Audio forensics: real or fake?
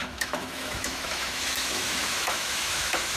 fake